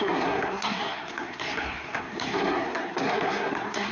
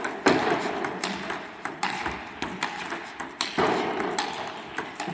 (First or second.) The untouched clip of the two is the second